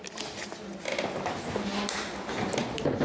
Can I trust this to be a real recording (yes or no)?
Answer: yes